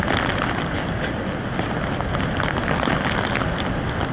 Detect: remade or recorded recorded